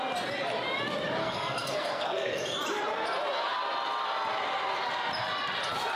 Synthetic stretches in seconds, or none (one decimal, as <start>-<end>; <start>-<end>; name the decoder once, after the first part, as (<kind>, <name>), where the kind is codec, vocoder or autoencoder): 1.2-2.4 (codec, SNAC)